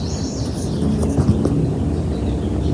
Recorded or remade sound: recorded